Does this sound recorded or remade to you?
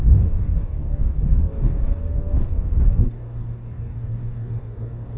remade